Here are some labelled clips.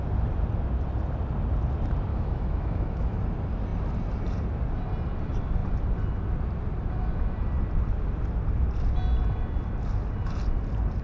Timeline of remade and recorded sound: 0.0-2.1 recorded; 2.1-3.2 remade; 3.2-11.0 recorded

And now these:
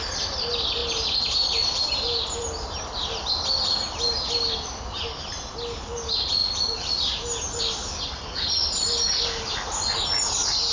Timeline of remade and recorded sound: 0.0-10.7 recorded

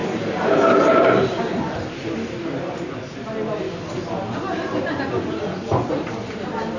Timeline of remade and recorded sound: 0.0-6.8 recorded

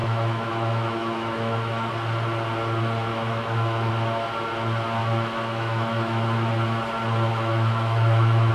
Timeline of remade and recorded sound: 0.0-1.9 remade; 1.9-3.1 recorded; 3.1-3.9 remade; 3.9-5.0 recorded; 5.0-6.5 remade; 6.5-7.3 recorded; 7.3-8.5 remade

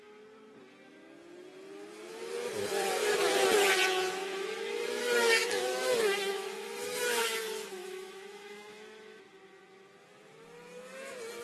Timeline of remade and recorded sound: 0.0-4.3 recorded; 4.3-9.2 remade; 9.2-11.4 recorded

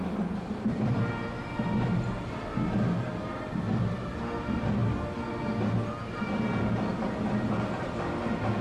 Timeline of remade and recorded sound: 0.0-8.6 recorded

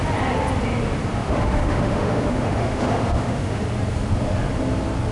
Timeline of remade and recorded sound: 0.0-1.1 recorded; 1.1-3.6 remade; 3.6-5.1 recorded

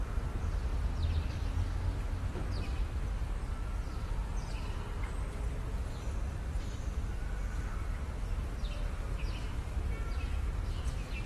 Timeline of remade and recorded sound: 0.0-11.3 recorded